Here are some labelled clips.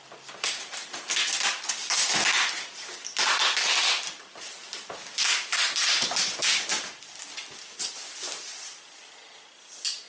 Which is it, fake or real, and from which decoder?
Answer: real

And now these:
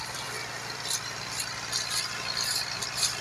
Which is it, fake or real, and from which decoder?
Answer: fake, vocoder, BigVGAN v2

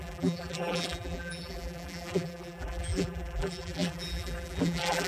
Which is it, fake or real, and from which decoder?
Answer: fake, vocoder, BigVGAN v2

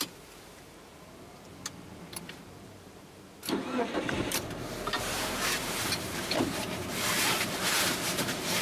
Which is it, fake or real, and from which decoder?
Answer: fake, vocoder, BigVGAN v2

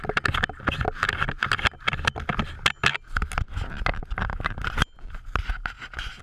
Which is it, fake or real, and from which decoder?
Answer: real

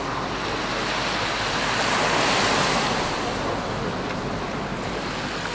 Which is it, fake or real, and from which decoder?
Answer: real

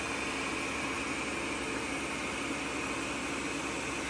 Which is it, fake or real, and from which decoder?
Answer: real